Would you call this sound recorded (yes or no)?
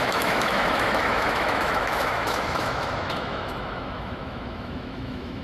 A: no